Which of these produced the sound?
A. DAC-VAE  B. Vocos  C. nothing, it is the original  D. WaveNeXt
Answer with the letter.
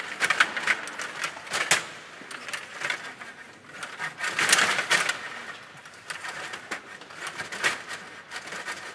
C